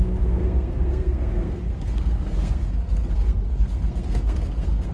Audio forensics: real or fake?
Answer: fake